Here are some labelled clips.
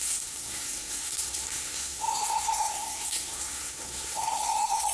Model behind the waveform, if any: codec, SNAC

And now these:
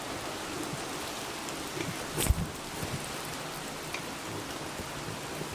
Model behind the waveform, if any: none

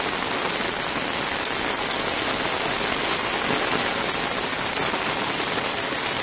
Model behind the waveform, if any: none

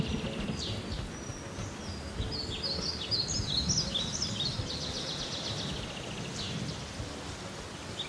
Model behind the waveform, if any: none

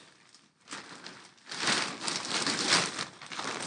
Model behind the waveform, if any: none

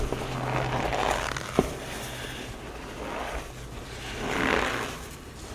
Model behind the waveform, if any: none